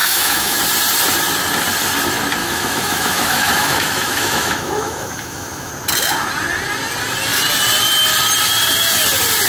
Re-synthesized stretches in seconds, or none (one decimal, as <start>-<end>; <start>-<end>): 0.0-0.6; 2.4-5.7